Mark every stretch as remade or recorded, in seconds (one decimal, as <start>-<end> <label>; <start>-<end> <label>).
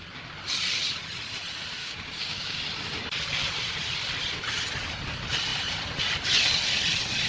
0.0-1.8 recorded; 1.8-2.6 remade; 2.6-7.3 recorded